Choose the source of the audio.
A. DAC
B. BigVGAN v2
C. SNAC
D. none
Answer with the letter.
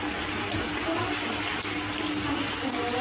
D